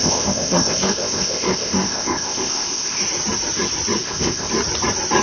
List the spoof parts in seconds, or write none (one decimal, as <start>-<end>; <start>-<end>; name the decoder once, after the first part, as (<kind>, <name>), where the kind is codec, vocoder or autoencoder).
0.0-3.0 (codec, ZipCodec); 4.0-4.5